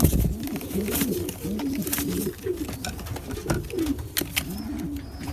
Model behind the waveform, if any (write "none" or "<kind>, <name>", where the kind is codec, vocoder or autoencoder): none